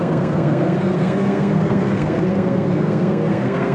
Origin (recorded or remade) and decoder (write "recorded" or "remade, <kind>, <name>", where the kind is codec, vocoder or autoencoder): remade, codec, SNAC